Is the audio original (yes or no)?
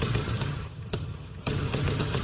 no